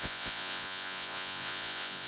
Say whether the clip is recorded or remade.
remade